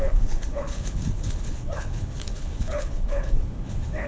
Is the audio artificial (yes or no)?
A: yes